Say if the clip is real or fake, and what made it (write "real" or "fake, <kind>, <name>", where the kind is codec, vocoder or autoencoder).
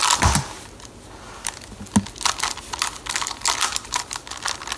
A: real